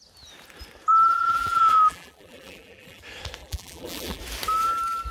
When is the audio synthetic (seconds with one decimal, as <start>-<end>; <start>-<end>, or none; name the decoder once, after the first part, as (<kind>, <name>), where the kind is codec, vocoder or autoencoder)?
0.9-3.0 (vocoder, BigVGAN v2); 3.4-4.2